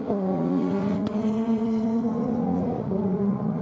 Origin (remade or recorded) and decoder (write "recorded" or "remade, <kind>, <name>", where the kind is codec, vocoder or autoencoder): remade, vocoder, Vocos